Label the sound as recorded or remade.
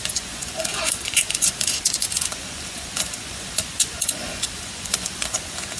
remade